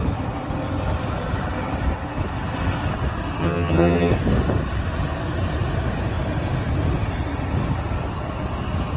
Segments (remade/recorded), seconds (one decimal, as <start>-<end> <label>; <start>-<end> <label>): 0.0-3.4 recorded; 3.4-4.1 remade; 4.1-9.0 recorded